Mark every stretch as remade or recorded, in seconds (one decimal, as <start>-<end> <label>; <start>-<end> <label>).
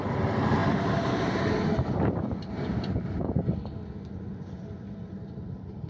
0.0-5.9 recorded